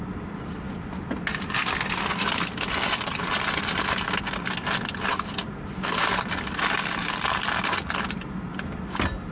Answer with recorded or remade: recorded